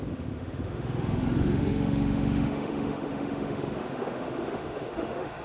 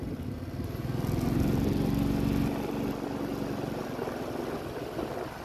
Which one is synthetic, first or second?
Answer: first